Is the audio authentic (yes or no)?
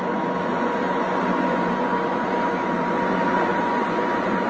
no